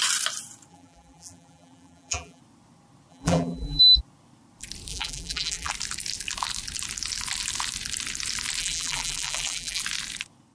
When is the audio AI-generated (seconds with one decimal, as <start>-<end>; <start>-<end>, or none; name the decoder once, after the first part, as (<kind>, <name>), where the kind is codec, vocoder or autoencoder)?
0.7-2.4 (vocoder, BigVGAN v2); 3.1-3.8; 4.9-5.7; 8.6-9.8